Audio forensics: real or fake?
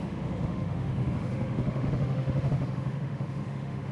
fake